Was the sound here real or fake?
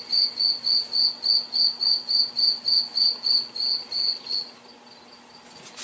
real